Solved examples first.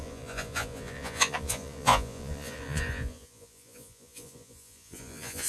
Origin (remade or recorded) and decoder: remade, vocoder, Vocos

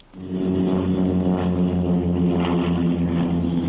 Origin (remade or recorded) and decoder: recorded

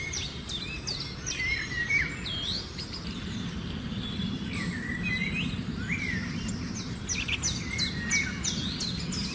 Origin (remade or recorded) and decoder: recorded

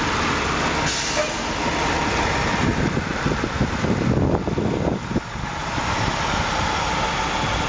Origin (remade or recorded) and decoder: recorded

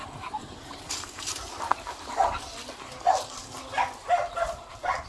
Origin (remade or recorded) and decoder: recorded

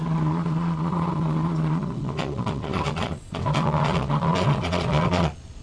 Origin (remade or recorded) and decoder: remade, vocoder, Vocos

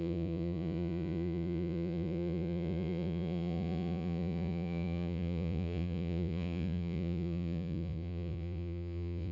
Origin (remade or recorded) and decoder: remade, vocoder, Vocos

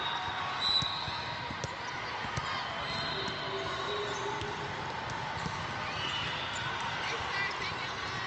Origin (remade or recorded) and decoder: recorded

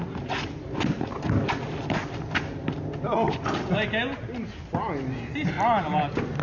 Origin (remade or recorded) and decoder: recorded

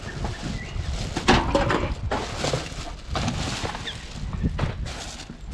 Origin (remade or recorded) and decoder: recorded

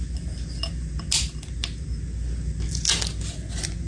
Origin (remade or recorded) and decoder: recorded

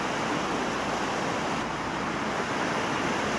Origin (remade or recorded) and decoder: recorded